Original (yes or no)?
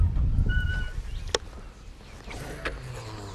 yes